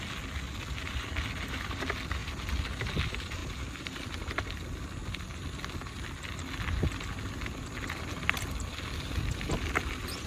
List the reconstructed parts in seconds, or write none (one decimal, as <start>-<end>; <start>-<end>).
none